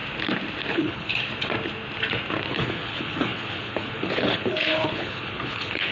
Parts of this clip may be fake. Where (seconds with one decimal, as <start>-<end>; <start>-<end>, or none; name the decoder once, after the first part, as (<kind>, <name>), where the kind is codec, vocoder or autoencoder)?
0.7-1.1 (codec, HILCodec); 2.5-5.9